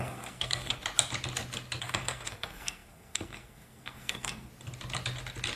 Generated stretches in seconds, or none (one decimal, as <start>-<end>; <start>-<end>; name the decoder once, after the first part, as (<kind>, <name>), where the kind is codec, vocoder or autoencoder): 0.0-0.8 (codec, SNAC); 1.8-4.5